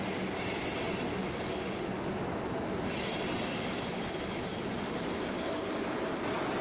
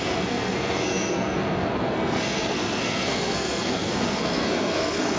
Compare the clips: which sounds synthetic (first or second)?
second